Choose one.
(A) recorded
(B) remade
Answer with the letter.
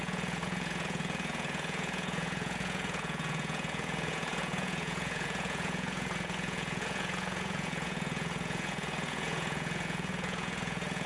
B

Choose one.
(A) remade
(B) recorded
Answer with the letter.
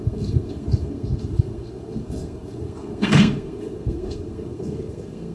A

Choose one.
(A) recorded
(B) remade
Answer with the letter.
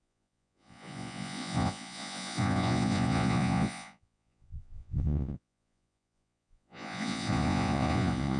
B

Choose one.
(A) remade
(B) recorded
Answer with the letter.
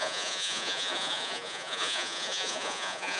A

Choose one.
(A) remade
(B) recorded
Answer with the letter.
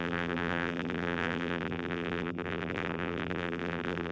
A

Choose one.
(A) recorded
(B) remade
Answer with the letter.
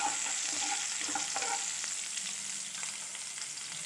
A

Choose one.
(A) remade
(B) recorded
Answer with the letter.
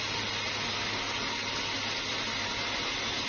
B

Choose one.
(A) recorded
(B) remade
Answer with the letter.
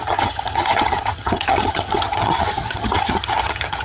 B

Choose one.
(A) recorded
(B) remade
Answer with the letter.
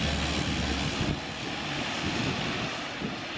A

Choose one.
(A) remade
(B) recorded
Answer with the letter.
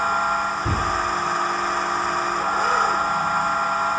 B